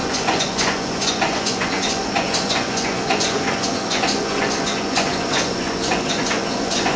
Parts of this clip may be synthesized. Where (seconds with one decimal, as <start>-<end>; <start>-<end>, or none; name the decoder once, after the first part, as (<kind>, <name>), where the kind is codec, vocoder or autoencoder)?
0.0-7.0 (vocoder, Vocos)